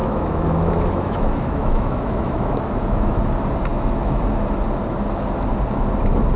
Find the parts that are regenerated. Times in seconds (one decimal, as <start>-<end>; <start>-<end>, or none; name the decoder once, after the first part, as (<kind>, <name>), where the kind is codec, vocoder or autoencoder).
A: 0.0-3.3 (autoencoder, DAC-VAE); 3.7-4.2